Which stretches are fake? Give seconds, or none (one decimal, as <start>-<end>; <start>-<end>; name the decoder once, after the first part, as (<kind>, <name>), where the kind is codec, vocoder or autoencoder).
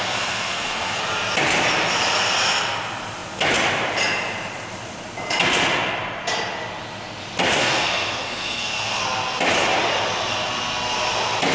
0.0-1.0 (codec, SNAC); 7.6-9.0